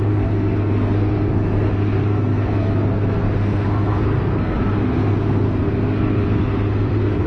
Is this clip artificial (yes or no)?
yes